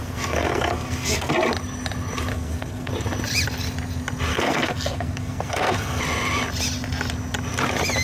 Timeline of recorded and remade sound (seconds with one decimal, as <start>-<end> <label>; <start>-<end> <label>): 0.0-1.3 remade; 1.3-2.3 recorded; 2.3-2.9 remade; 2.9-4.3 recorded; 4.3-6.0 remade; 6.0-8.0 recorded